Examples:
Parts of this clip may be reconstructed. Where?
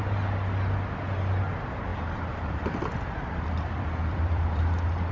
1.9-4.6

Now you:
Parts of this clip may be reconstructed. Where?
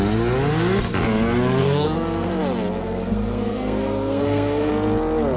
1.6-2.3; 2.8-4.7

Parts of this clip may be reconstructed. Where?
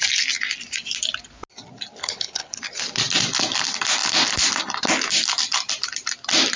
2.0-2.6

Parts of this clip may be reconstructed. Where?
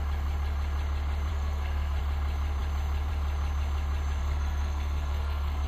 1.3-2.0; 4.2-5.7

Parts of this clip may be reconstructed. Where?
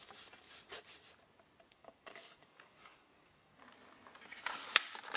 1.7-3.6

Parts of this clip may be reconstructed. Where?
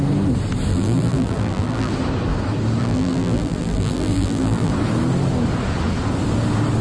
0.7-1.9; 2.8-4.7